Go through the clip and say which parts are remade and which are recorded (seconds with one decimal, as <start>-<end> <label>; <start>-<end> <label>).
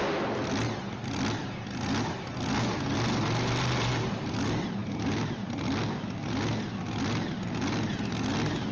0.0-8.7 recorded